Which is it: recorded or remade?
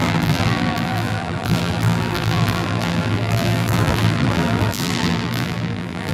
remade